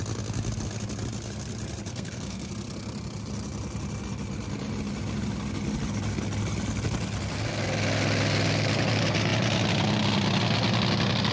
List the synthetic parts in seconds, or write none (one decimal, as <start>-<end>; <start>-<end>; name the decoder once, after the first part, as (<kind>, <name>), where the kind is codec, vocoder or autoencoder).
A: 1.9-2.5 (codec, SNAC)